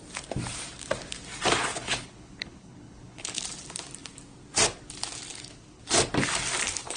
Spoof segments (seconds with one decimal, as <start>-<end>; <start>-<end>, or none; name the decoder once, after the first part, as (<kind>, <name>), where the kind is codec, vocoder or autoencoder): 1.7-3.4 (codec, HILCodec); 5.3-5.8

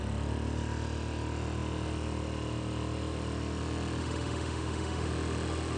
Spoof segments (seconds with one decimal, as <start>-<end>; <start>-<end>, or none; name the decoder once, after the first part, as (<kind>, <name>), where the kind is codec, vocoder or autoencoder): 4.0-5.1 (autoencoder, DAC-VAE)

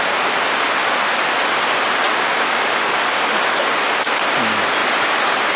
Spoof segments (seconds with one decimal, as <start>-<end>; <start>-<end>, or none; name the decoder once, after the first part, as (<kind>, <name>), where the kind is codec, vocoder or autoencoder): none

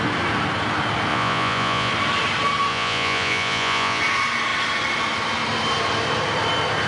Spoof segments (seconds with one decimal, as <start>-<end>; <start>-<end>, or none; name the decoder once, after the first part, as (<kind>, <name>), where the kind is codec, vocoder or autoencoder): 1.1-1.9 (vocoder, Vocos); 2.7-4.0

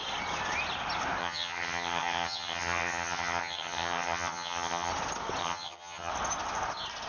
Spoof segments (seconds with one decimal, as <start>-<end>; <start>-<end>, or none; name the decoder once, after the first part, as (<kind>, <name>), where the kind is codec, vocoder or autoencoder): 1.2-4.9 (vocoder, HiFi-GAN); 5.4-6.1

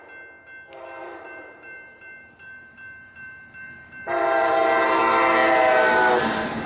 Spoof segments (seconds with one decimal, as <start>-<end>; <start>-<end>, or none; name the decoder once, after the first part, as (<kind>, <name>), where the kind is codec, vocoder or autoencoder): 1.0-5.0 (vocoder, BigVGAN v2)